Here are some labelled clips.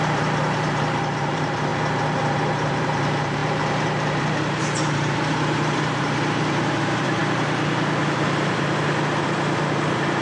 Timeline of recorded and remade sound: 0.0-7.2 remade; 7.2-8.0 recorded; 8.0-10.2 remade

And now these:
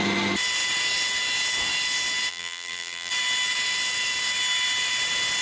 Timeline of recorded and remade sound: 0.0-2.3 recorded; 2.3-3.1 remade; 3.1-5.4 recorded

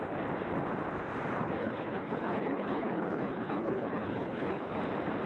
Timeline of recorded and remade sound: 0.0-1.6 recorded; 1.6-4.8 remade; 4.8-5.3 recorded

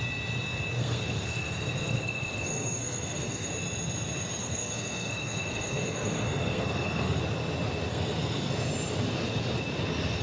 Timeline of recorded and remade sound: 0.0-0.8 recorded; 0.8-3.5 remade; 3.5-4.4 recorded; 4.4-7.2 remade; 7.2-7.9 recorded; 7.9-8.5 remade; 8.5-10.2 recorded